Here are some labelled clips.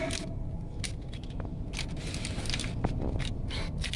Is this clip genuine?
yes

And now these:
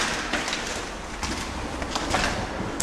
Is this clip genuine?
yes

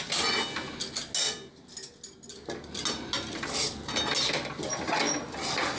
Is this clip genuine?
yes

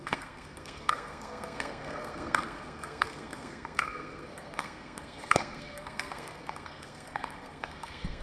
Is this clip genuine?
no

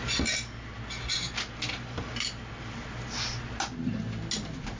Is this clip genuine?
yes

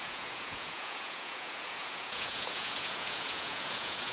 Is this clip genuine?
no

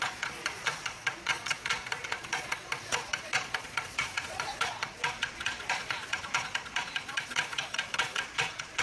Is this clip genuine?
no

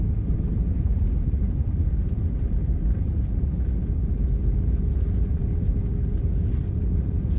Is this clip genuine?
no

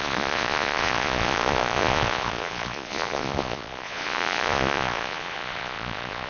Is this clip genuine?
no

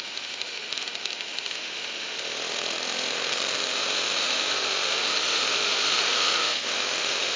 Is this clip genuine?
no